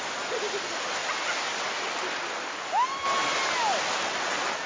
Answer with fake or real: real